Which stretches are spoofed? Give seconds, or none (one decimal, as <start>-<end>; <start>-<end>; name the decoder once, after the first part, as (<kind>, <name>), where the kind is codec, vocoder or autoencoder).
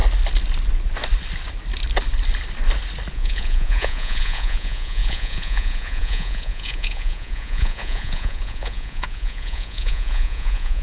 3.1-10.8 (vocoder, Vocos)